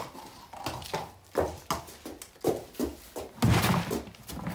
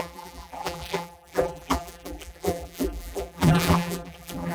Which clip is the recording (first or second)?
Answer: first